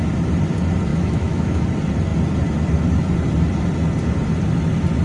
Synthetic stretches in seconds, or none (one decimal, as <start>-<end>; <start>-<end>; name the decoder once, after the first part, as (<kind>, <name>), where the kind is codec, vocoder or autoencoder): 0.9-1.6 (autoencoder, DAC-VAE)